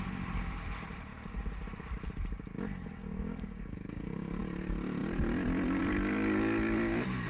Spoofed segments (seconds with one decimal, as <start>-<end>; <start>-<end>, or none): 3.0-4.4

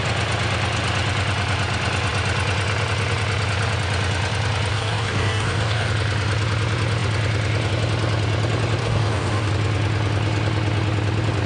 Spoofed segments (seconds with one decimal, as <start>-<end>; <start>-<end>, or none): 4.7-5.9; 8.8-9.5

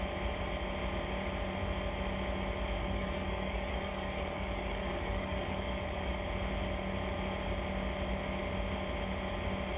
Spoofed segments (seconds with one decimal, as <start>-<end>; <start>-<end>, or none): 2.8-6.1

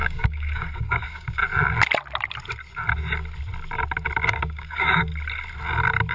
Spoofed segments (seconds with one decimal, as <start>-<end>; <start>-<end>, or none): 0.0-1.4; 4.3-5.1

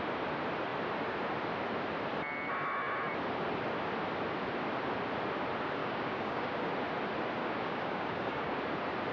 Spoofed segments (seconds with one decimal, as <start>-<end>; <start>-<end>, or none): 5.8-6.7; 7.4-8.6

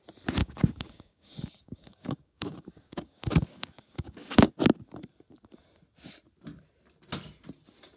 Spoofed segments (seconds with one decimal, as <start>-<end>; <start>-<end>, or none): 0.4-4.5

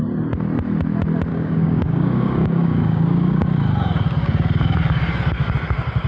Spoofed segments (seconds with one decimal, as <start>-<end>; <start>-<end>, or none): 1.3-3.5

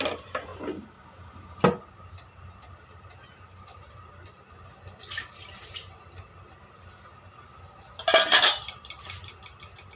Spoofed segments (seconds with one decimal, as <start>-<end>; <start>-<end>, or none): none